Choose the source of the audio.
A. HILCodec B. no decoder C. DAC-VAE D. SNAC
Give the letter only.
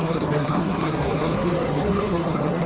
D